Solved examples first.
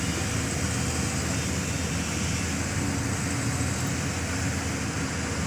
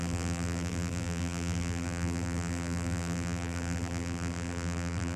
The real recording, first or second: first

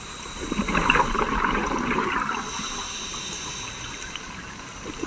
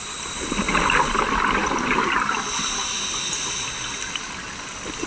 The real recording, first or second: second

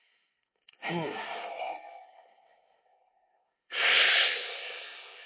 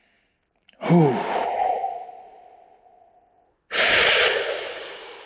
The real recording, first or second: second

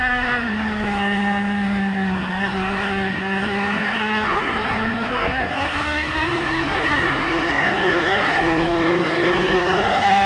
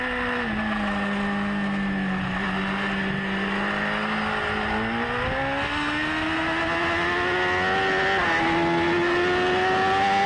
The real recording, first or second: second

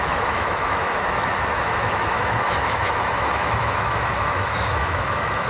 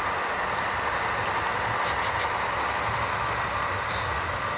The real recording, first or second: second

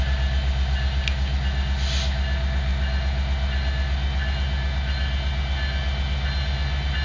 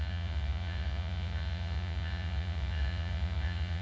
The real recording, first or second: first